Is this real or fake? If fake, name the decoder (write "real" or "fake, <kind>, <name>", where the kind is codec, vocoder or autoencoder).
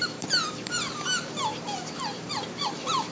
fake, vocoder, BigVGAN v2